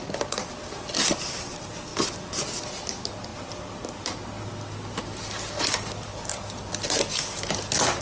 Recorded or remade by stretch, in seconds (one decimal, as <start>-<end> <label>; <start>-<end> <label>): 0.0-8.0 recorded